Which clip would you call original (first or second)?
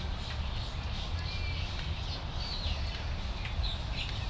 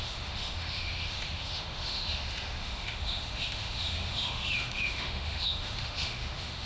first